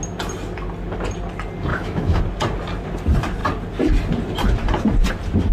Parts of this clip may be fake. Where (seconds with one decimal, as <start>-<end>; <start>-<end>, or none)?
1.7-2.2

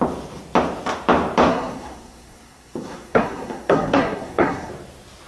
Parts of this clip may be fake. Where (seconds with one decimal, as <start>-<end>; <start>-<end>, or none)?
1.5-4.7

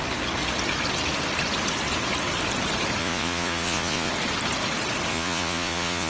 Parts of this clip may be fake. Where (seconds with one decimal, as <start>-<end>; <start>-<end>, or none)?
3.0-4.1; 5.1-6.1

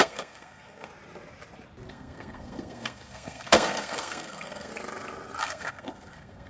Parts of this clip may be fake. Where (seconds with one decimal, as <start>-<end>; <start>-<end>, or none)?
0.0-0.9; 1.9-4.7; 5.4-6.5

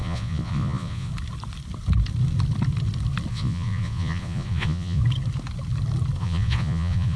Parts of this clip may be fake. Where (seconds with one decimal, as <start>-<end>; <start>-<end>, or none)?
0.0-1.1; 3.3-5.0; 6.2-7.2

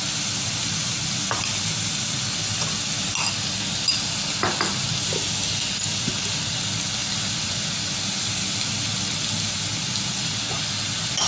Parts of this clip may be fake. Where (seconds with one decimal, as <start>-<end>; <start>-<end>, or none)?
none